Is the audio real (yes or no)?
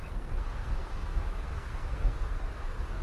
no